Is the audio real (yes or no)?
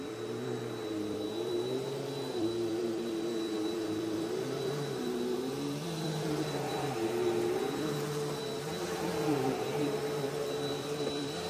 no